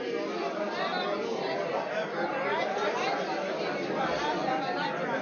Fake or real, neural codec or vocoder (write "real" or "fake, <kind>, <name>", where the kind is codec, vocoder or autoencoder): real